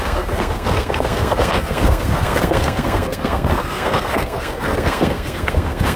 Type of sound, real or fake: fake